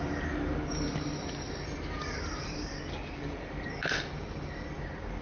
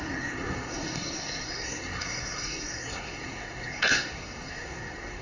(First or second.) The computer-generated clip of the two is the second